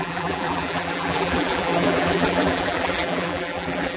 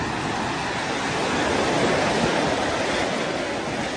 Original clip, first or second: second